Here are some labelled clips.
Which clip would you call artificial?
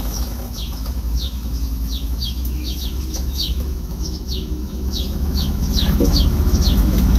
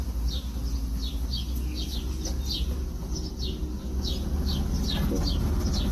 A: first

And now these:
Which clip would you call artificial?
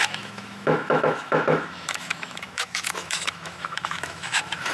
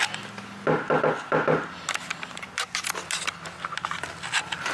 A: first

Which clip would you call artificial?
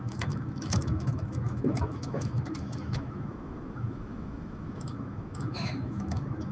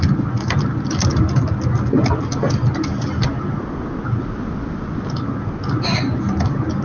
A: first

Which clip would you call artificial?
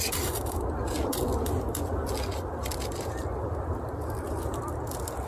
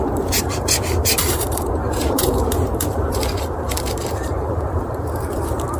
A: second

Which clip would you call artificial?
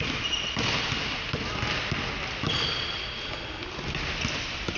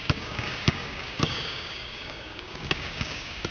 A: second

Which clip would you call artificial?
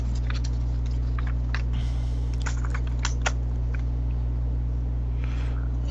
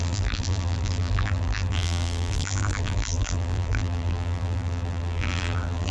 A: second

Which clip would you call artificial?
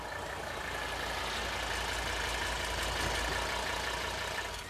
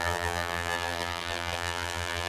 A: second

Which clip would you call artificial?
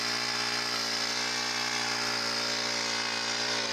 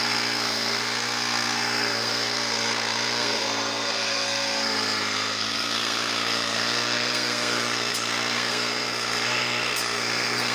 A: second